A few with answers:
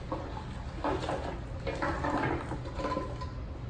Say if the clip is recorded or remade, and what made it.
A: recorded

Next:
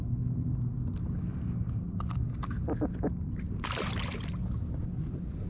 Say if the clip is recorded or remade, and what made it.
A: recorded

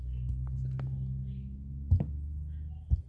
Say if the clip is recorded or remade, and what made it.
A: recorded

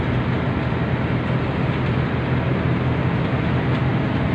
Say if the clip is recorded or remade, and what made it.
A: recorded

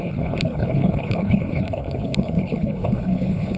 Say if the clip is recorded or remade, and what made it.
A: remade, codec, HILCodec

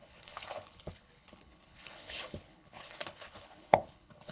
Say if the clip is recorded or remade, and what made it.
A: remade, codec, HILCodec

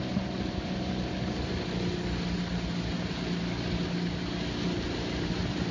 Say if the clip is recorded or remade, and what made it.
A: recorded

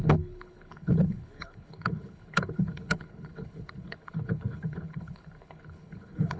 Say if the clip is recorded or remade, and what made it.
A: remade, codec, HILCodec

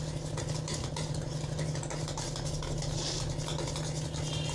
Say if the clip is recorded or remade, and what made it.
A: recorded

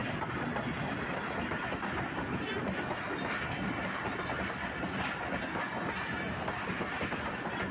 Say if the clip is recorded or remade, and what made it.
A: recorded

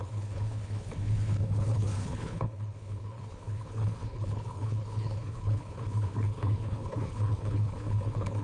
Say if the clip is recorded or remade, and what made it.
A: remade, codec, HILCodec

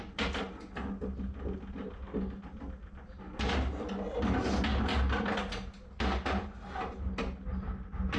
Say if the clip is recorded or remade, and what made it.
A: recorded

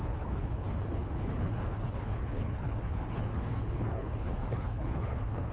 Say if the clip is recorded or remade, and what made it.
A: remade, codec, HILCodec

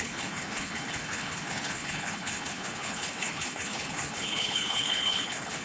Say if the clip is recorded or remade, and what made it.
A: remade, codec, HILCodec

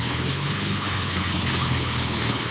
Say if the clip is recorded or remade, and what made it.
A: remade, codec, HILCodec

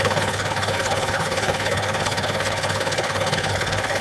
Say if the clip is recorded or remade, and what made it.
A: remade, codec, HILCodec